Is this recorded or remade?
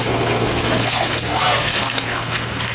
remade